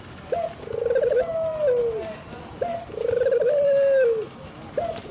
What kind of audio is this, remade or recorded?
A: recorded